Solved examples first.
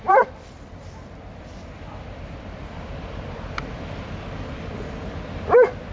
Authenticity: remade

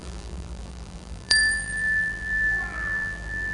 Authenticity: remade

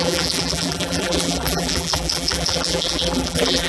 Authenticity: remade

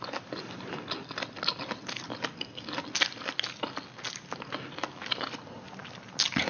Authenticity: recorded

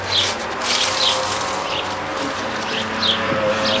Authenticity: recorded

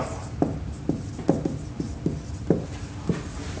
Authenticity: recorded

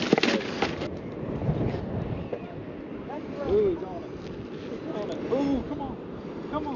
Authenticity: recorded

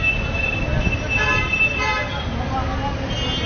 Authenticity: recorded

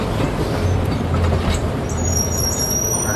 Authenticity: remade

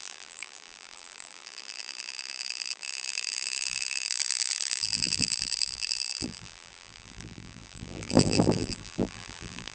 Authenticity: remade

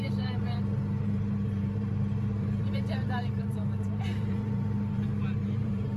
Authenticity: remade